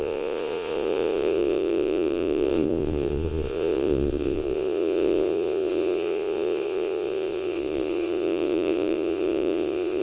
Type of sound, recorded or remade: remade